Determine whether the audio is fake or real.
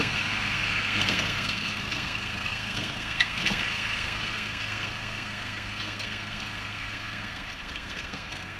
fake